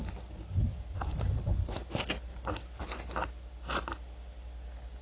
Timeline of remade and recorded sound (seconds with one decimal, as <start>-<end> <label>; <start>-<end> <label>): 0.0-5.0 recorded